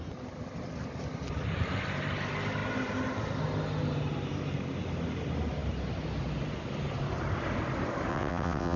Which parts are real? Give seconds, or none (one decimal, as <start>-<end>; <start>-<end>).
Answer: 0.0-8.1